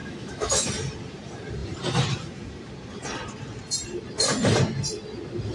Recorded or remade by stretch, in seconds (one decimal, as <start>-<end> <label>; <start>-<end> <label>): 0.0-0.7 remade; 0.7-5.5 recorded